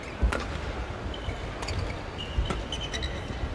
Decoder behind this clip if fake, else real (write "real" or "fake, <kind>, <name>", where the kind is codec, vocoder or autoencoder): real